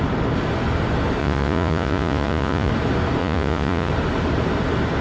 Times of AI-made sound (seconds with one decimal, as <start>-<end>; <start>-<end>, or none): 1.2-2.7; 3.2-3.9